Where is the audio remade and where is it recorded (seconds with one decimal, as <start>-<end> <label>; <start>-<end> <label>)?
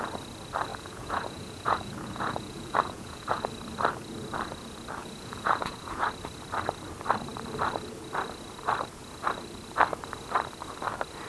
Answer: 0.0-0.7 recorded; 0.7-3.5 remade; 3.5-5.0 recorded; 5.0-6.1 remade; 6.1-11.3 recorded